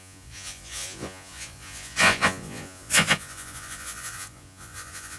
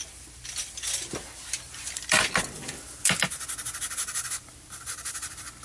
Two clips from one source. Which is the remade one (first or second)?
first